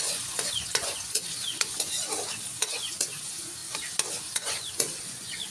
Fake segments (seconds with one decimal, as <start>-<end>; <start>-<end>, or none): 0.0-1.9; 2.5-3.6; 4.2-5.5